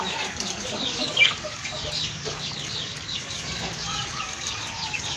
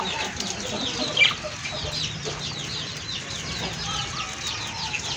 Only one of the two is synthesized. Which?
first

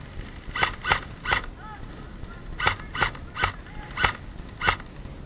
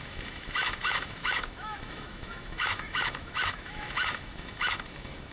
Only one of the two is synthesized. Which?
second